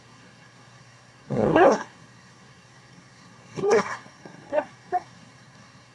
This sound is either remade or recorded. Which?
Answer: remade